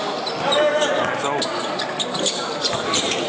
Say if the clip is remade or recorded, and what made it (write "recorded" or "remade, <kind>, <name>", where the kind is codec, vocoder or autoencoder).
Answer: recorded